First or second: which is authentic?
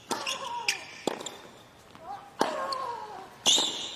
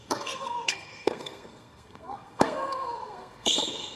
first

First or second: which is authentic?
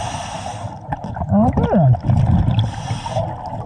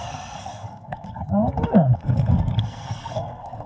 first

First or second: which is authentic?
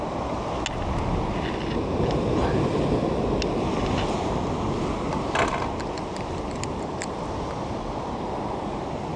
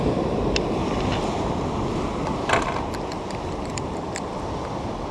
first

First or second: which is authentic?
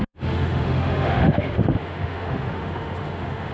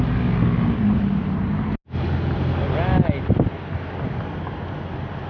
second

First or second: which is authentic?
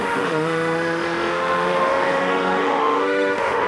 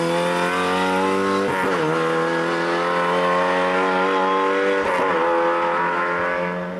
second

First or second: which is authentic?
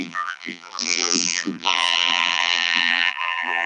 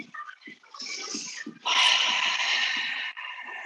second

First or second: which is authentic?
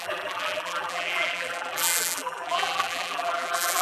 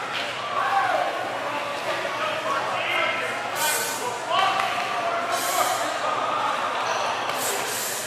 second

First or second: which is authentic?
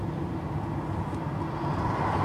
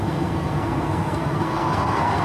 first